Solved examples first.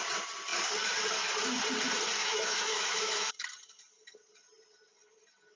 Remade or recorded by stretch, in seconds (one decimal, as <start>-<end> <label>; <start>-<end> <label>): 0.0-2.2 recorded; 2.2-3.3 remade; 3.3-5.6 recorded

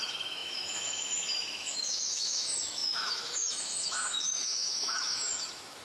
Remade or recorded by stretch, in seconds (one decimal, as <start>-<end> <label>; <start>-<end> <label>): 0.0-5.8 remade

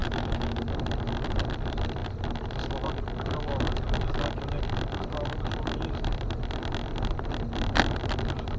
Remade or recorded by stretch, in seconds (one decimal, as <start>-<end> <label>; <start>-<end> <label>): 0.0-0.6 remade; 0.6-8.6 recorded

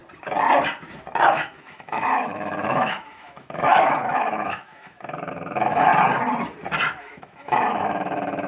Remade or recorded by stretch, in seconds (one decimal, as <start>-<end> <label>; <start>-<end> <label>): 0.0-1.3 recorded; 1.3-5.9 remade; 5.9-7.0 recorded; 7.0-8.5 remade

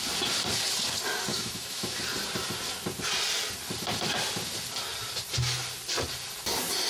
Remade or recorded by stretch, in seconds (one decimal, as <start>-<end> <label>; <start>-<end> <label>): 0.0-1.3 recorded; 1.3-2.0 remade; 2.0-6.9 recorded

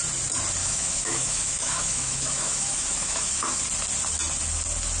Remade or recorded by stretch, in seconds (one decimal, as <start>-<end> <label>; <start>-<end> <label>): 0.0-0.6 recorded; 0.6-3.6 remade; 3.6-5.0 recorded

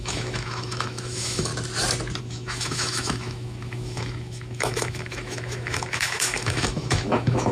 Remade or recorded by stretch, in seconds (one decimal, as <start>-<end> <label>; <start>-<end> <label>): 0.0-1.5 remade; 1.5-2.2 recorded; 2.2-7.5 remade